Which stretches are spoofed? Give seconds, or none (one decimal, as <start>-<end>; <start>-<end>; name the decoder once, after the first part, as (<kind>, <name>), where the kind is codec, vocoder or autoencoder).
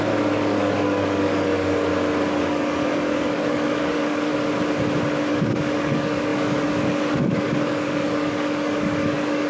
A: 0.0-1.9 (codec, DAC); 2.4-4.3; 5.3-9.5